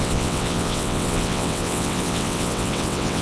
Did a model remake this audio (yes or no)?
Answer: yes